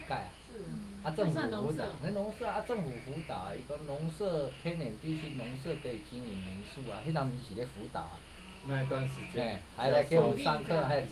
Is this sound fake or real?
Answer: fake